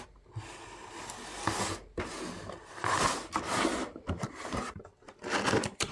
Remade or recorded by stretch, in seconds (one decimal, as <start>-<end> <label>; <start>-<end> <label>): 0.0-1.3 recorded; 1.3-1.9 remade; 1.9-5.9 recorded